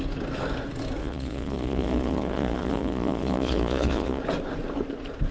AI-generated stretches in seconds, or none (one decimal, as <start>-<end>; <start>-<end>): 1.0-4.2